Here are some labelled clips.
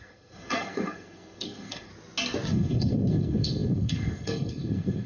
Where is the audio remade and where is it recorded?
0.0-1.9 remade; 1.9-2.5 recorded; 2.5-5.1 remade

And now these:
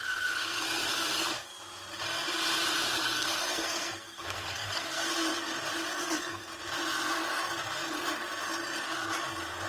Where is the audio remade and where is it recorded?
0.0-1.5 remade; 1.5-2.9 recorded; 2.9-5.1 remade; 5.1-6.0 recorded; 6.0-6.5 remade; 6.5-9.7 recorded

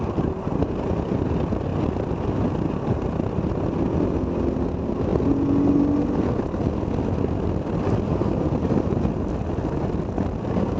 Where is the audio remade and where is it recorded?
0.0-10.8 recorded

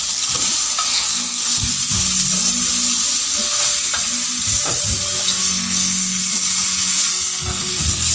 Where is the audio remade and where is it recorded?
0.0-0.9 recorded; 0.9-1.7 remade; 1.7-5.4 recorded; 5.4-6.2 remade; 6.2-7.1 recorded; 7.1-8.1 remade

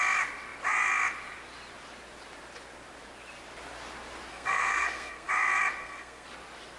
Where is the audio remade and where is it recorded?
0.0-4.3 recorded; 4.3-5.3 remade; 5.3-5.8 recorded; 5.8-6.3 remade; 6.3-6.8 recorded

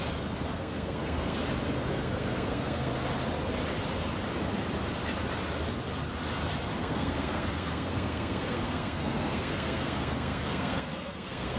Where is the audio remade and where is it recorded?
0.0-0.5 recorded; 0.5-1.4 remade; 1.4-1.9 recorded; 1.9-2.9 remade; 2.9-6.8 recorded; 6.8-11.6 remade

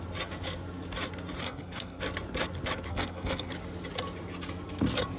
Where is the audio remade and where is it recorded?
0.0-1.4 recorded; 1.4-2.0 remade; 2.0-2.9 recorded; 2.9-3.5 remade; 3.5-5.2 recorded

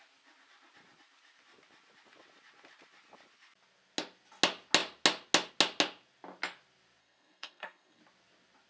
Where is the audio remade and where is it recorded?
0.0-7.0 recorded; 7.0-8.0 remade; 8.0-8.7 recorded